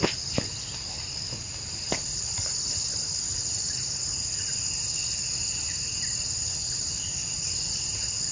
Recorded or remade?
recorded